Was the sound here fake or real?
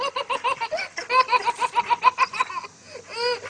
real